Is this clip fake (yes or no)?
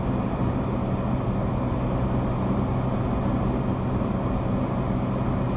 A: no